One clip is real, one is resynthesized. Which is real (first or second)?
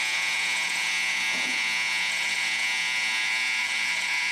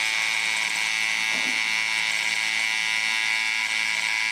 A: second